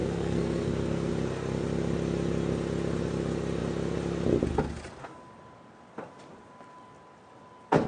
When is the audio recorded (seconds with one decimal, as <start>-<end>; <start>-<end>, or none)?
1.1-7.9

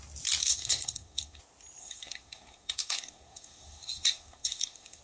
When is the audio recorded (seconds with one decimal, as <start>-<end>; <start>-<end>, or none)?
0.0-0.4; 1.4-1.8